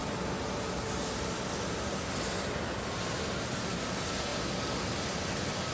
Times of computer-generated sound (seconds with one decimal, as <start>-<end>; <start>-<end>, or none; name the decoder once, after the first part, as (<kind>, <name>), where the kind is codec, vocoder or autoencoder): none